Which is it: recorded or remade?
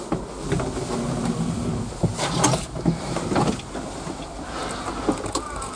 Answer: recorded